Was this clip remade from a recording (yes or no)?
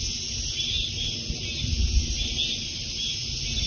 no